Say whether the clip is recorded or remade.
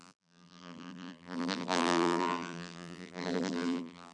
remade